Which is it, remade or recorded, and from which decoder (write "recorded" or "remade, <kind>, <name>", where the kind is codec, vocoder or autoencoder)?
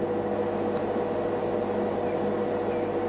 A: recorded